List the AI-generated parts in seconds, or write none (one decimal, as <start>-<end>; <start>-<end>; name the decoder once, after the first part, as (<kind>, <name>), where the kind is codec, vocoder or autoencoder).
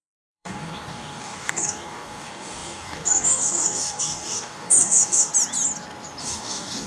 0.0-5.3 (codec, DAC); 6.2-6.9